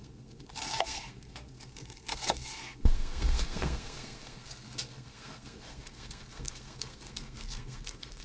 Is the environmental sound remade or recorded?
remade